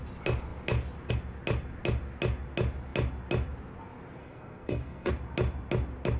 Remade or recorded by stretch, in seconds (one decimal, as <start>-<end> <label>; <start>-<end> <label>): 0.0-4.2 recorded; 4.2-5.1 remade; 5.1-6.2 recorded